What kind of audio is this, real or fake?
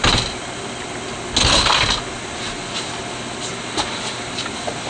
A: real